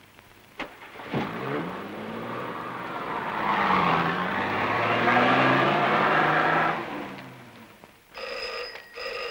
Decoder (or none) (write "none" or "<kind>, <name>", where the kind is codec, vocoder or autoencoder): vocoder, BigVGAN v2